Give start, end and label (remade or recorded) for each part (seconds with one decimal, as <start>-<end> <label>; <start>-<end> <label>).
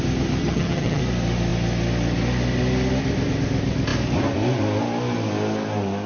0.0-0.4 recorded; 0.4-1.0 remade; 1.0-6.1 recorded